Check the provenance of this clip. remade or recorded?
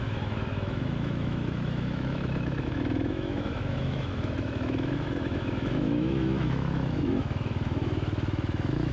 remade